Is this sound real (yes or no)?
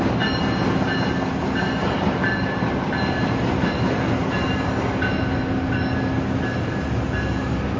yes